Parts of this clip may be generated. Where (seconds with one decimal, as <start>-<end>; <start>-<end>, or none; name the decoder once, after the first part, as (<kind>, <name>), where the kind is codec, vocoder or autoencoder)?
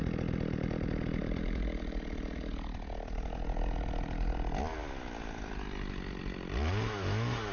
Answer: none